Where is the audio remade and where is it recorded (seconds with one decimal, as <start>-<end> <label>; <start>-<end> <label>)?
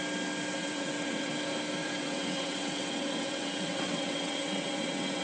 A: 0.0-0.6 recorded; 0.6-1.3 remade; 1.3-1.8 recorded; 1.8-5.2 remade